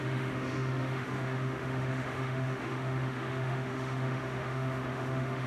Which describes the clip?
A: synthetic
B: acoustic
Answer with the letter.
A